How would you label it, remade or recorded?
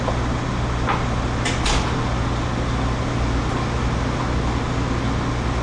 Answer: recorded